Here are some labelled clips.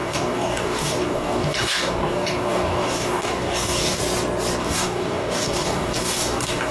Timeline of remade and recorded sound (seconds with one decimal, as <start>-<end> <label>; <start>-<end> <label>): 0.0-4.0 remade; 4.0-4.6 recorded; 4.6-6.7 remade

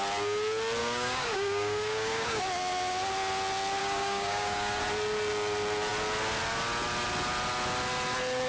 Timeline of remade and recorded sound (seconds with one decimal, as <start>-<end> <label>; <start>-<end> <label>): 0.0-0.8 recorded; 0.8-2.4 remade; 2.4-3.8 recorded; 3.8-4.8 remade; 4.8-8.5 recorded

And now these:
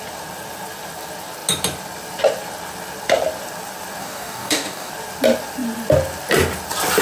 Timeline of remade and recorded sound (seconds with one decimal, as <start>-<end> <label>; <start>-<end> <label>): 0.0-4.0 recorded; 4.0-4.9 remade; 4.9-7.0 recorded

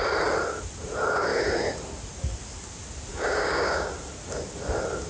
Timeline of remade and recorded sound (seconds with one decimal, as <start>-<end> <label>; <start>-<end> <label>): 0.0-3.1 recorded; 3.1-3.9 remade; 3.9-5.1 recorded

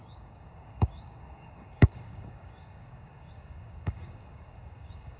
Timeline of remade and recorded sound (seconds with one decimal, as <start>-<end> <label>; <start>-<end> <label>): 0.0-5.2 remade

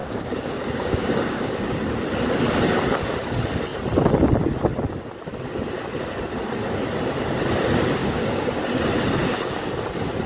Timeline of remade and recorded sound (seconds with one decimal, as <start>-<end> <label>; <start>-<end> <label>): 0.0-1.8 remade; 1.8-8.0 recorded; 8.0-8.6 remade; 8.6-9.2 recorded; 9.2-9.8 remade; 9.8-10.3 recorded